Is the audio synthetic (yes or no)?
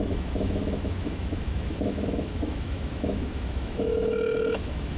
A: yes